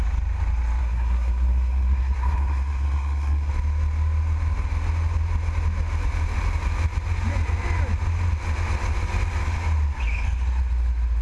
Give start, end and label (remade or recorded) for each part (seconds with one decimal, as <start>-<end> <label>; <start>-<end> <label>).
0.0-0.8 recorded; 0.8-3.5 remade; 3.5-11.2 recorded